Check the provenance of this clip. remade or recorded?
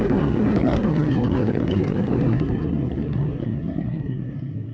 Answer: remade